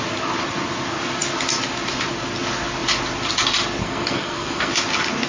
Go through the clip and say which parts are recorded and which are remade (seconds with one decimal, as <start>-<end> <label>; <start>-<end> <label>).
0.0-3.8 recorded; 3.8-4.7 remade; 4.7-5.3 recorded